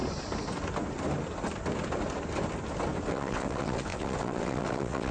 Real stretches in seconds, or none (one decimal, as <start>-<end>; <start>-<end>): 0.0-3.1